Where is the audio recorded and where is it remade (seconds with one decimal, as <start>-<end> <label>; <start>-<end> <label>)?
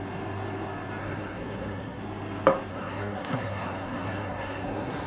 0.0-1.0 recorded; 1.0-2.0 remade; 2.0-2.7 recorded; 2.7-5.1 remade